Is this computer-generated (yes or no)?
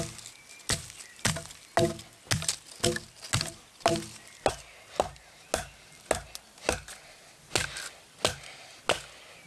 no